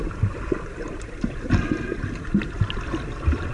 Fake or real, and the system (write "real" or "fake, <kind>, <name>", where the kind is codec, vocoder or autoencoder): real